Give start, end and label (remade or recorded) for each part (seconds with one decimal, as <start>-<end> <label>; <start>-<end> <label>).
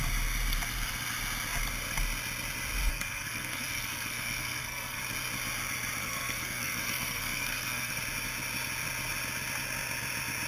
0.0-2.9 recorded; 2.9-5.0 remade; 5.0-6.0 recorded; 6.0-7.9 remade; 7.9-10.5 recorded